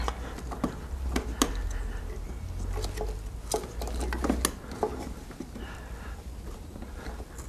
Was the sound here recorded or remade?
recorded